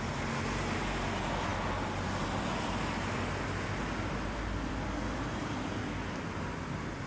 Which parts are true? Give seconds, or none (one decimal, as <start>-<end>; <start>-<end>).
0.0-7.1

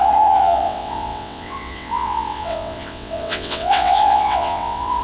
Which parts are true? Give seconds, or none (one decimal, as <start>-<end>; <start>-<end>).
none

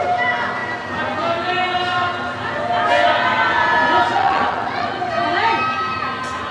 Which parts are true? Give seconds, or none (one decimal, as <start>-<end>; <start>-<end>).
0.0-4.1; 5.1-6.5

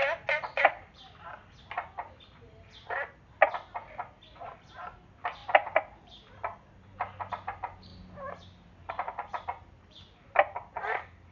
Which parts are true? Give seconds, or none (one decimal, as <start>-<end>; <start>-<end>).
0.0-11.3

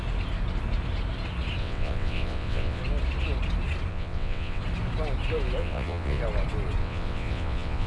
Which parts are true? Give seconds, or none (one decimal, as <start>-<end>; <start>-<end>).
0.0-1.6; 2.8-3.9; 4.6-5.6; 6.2-6.8